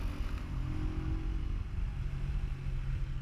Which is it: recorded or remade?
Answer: recorded